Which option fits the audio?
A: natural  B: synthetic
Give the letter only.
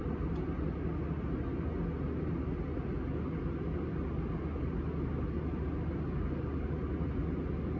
A